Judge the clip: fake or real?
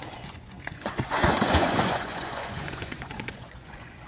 fake